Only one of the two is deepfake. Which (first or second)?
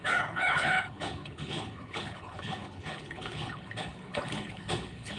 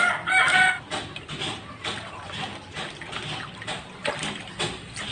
first